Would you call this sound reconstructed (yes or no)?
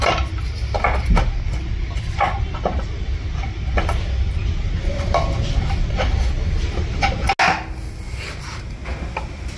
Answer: no